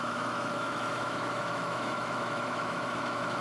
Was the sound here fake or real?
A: fake